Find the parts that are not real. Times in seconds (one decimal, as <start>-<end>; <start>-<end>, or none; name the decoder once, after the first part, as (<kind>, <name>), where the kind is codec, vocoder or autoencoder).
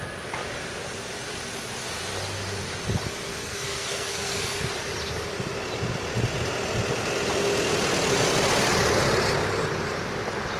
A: 3.3-4.6 (codec, SNAC)